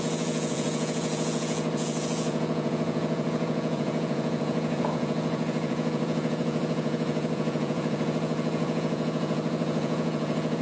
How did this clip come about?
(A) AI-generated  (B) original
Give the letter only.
A